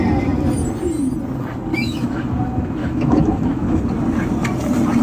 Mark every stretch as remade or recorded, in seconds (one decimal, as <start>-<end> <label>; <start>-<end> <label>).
0.0-1.7 recorded; 1.7-2.3 remade; 2.3-2.8 recorded; 2.8-3.8 remade; 3.8-5.0 recorded